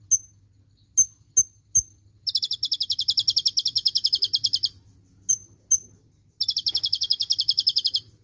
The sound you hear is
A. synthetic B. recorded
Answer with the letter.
B